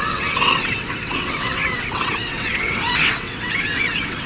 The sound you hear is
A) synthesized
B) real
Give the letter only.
A